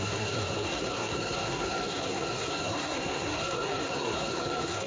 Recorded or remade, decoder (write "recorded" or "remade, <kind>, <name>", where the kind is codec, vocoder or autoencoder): remade, codec, SNAC